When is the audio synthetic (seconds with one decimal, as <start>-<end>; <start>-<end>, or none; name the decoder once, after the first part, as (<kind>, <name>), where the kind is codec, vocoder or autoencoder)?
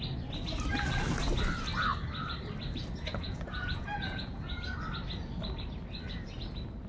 3.1-4.6 (vocoder, Vocos)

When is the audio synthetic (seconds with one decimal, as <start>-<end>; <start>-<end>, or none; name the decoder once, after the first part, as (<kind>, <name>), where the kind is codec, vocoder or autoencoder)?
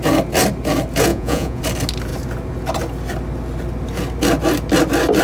1.1-1.6 (vocoder, Vocos)